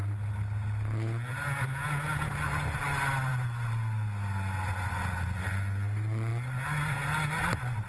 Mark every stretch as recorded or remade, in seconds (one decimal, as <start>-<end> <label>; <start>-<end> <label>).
0.0-7.9 recorded